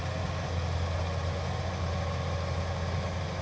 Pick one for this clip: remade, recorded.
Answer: recorded